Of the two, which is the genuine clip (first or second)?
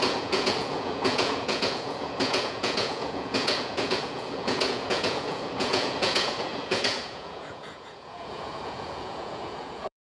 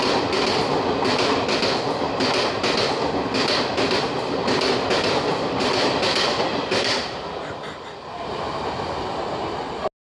second